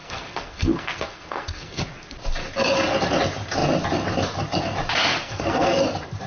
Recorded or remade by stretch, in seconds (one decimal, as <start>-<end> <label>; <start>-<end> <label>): 0.0-1.8 remade; 1.8-5.1 recorded; 5.1-5.8 remade; 5.8-6.3 recorded